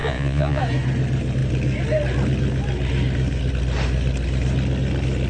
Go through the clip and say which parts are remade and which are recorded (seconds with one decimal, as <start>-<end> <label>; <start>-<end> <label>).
0.0-0.6 remade; 0.6-5.3 recorded